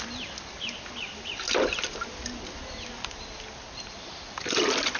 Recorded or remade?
recorded